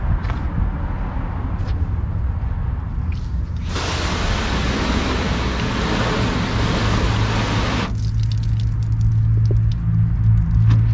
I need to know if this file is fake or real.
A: real